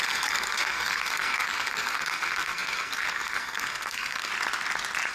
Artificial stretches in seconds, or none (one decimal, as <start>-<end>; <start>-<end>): 0.0-4.3